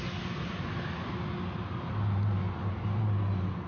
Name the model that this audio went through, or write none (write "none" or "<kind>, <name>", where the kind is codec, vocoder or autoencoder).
none